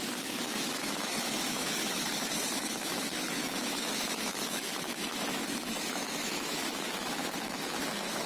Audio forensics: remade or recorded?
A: remade